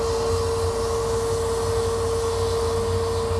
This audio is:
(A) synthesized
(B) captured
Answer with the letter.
B